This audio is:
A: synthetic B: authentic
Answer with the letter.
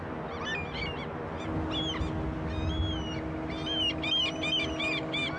B